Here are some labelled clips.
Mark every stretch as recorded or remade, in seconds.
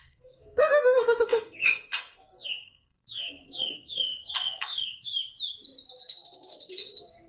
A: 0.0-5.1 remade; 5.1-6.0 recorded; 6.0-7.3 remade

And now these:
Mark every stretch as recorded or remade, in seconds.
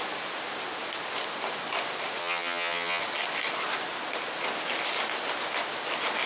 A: 0.0-2.2 recorded; 2.2-3.0 remade; 3.0-6.3 recorded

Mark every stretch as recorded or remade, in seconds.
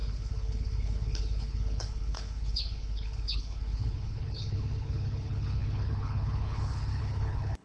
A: 0.0-7.6 remade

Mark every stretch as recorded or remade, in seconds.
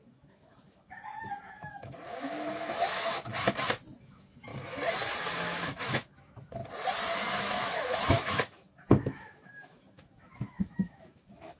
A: 0.0-3.3 remade; 3.3-4.0 recorded; 4.0-4.5 remade; 4.5-5.2 recorded; 5.2-6.6 remade; 6.6-7.3 recorded; 7.3-11.6 remade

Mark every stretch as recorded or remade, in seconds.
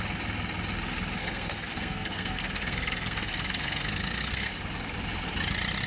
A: 0.0-1.2 recorded; 1.2-4.5 remade; 4.5-5.9 recorded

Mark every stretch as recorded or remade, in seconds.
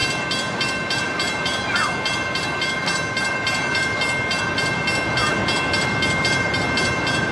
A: 0.0-7.3 recorded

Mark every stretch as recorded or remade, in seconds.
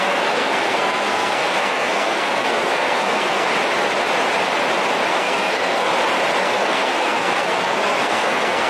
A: 0.0-3.5 remade; 3.5-5.1 recorded; 5.1-5.9 remade; 5.9-6.4 recorded; 6.4-8.7 remade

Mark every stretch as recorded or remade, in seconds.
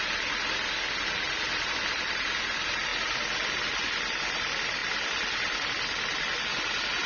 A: 0.0-7.1 recorded